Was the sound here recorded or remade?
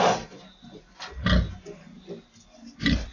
recorded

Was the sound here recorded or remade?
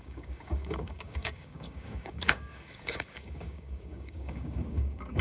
remade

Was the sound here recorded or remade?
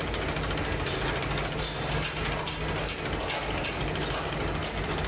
recorded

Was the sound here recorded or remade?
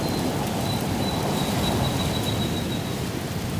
recorded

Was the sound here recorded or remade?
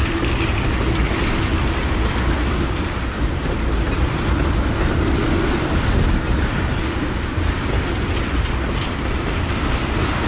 recorded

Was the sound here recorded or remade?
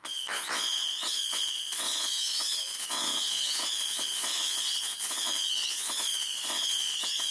remade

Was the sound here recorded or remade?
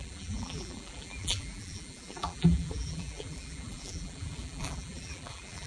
remade